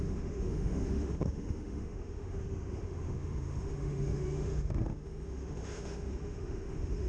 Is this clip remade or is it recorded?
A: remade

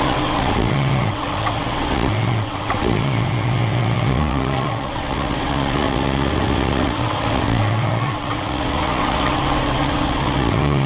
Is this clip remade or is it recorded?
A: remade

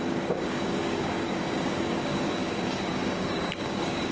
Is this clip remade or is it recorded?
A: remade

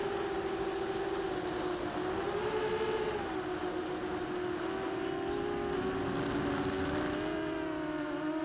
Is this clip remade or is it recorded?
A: recorded